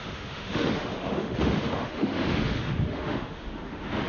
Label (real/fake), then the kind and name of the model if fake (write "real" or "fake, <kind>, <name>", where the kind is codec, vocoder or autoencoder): fake, autoencoder, DAC-VAE